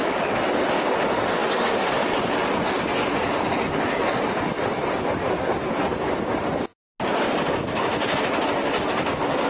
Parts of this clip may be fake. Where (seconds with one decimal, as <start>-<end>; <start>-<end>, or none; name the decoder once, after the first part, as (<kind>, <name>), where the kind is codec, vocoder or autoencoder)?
none